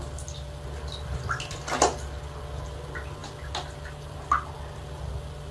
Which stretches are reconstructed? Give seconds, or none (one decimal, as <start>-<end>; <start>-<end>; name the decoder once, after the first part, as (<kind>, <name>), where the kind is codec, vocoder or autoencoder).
none